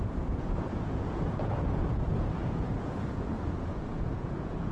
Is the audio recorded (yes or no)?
no